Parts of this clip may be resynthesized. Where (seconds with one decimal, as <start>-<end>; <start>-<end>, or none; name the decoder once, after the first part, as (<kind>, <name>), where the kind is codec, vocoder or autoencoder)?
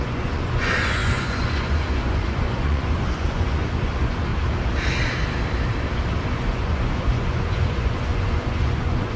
0.0-4.3 (vocoder, Vocos); 6.3-9.2